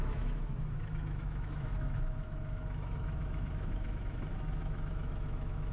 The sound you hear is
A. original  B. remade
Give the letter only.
B